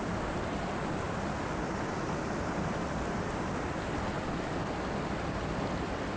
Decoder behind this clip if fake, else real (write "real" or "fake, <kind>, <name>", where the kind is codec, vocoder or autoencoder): real